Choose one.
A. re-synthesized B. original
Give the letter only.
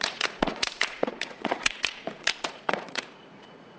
A